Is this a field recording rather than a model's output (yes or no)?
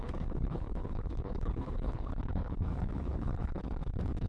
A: no